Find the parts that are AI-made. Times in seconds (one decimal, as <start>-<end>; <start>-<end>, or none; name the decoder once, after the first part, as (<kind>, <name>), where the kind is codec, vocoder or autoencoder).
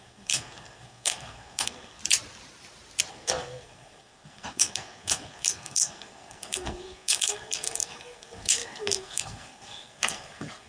0.0-2.0 (codec, SNAC); 3.1-10.7